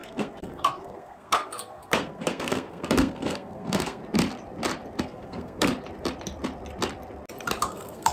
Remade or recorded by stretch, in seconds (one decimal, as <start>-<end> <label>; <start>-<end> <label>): 0.0-4.0 remade; 4.0-5.0 recorded; 5.0-5.7 remade; 5.7-7.6 recorded; 7.6-8.1 remade